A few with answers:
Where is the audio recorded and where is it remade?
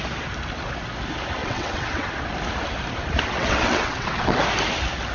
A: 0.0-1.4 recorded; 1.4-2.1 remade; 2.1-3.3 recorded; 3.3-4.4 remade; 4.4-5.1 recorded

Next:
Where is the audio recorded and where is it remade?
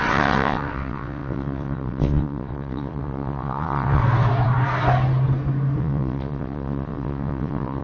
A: 0.0-4.0 remade; 4.0-5.8 recorded; 5.8-7.8 remade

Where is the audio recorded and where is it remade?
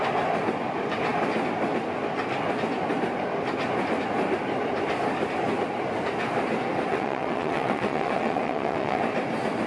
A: 0.0-6.9 recorded; 6.9-9.0 remade; 9.0-9.7 recorded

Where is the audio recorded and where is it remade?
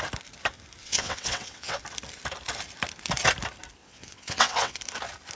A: 0.0-0.8 recorded; 0.8-1.8 remade; 1.8-3.8 recorded; 3.8-4.8 remade; 4.8-5.4 recorded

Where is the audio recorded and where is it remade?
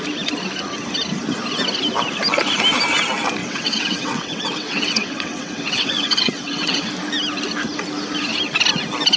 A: 0.0-3.4 recorded; 3.4-6.9 remade; 6.9-9.2 recorded